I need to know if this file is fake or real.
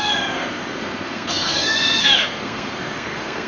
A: fake